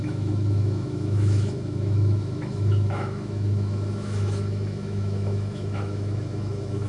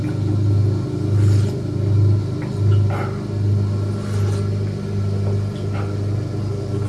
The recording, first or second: second